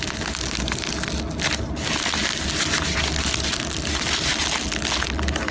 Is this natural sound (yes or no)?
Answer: yes